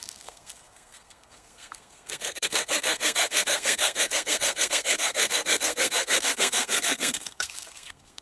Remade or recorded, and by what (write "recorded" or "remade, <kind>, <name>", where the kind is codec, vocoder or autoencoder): remade, codec, SNAC